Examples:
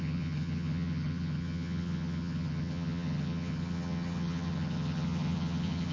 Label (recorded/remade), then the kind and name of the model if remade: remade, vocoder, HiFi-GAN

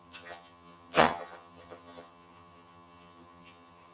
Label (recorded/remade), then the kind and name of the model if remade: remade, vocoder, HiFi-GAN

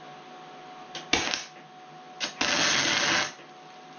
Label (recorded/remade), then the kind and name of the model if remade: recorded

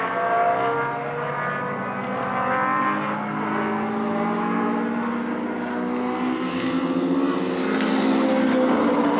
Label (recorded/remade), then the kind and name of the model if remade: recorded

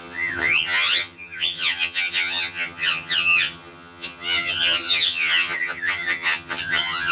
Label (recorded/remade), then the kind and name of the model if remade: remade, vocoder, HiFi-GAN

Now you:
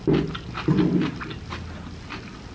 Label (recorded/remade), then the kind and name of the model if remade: recorded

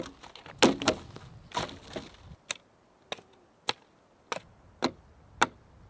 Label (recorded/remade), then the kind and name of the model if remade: recorded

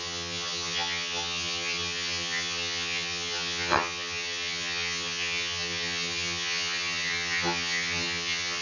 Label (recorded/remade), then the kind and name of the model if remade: remade, vocoder, HiFi-GAN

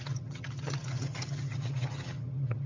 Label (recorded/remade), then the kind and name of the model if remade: remade, vocoder, HiFi-GAN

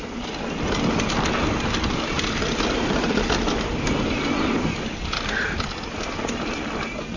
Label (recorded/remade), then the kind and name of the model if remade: recorded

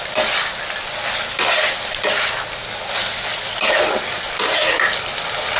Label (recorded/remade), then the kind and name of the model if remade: recorded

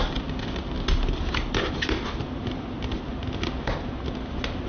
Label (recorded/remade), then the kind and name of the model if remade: recorded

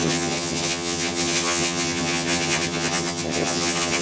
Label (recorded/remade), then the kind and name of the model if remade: remade, vocoder, HiFi-GAN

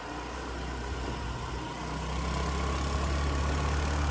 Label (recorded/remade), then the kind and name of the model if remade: recorded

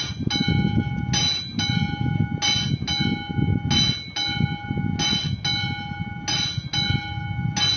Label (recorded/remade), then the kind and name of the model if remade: recorded